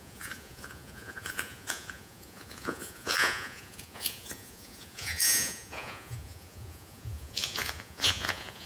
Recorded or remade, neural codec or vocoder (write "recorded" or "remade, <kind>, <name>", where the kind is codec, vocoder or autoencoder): remade, vocoder, Vocos